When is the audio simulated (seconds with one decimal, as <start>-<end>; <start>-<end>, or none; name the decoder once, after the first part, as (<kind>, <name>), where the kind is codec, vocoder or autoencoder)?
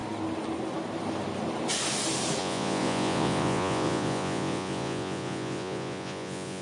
2.4-6.6 (vocoder, Vocos)